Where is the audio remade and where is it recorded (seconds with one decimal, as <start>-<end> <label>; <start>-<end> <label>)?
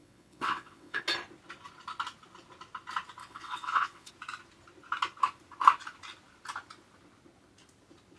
0.0-1.0 remade; 1.0-3.2 recorded; 3.2-4.1 remade; 4.1-8.2 recorded